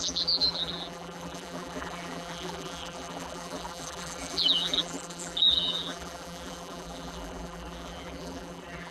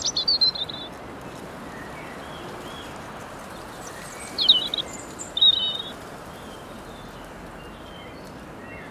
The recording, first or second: second